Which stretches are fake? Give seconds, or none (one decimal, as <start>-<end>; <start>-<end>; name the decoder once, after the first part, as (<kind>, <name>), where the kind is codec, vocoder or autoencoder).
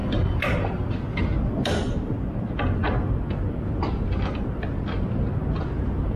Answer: none